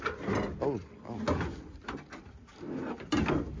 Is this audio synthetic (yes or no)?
no